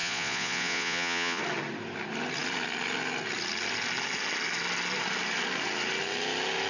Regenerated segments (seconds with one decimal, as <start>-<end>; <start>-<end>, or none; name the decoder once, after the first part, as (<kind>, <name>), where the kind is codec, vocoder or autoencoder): 0.0-1.4 (vocoder, Vocos)